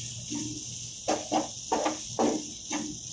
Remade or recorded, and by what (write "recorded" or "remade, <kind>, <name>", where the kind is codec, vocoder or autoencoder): recorded